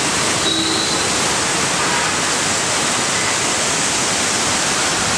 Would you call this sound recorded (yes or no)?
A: yes